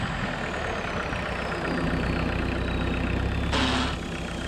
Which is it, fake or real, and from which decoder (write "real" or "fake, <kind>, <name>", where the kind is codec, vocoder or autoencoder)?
real